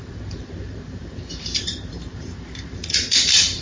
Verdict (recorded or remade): remade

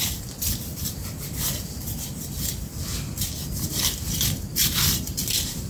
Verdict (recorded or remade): remade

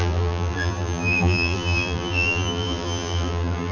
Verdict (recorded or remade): remade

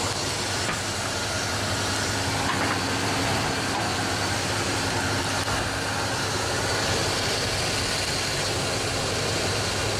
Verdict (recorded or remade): recorded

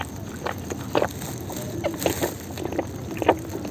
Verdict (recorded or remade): recorded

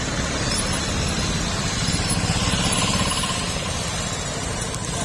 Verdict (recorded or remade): remade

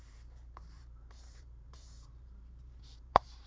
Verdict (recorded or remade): remade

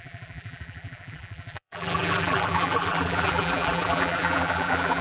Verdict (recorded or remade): remade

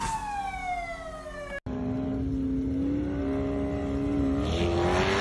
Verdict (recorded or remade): recorded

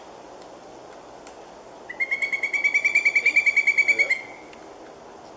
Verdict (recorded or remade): recorded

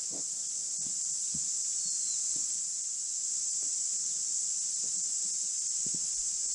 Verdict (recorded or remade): recorded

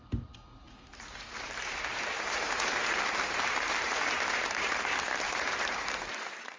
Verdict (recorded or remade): remade